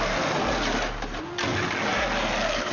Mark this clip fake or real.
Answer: real